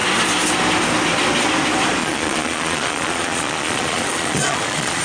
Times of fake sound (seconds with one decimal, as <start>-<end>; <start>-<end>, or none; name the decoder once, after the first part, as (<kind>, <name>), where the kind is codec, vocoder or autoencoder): 2.0-5.0 (vocoder, Vocos)